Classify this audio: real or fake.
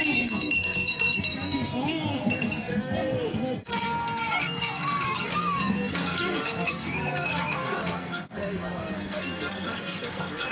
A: fake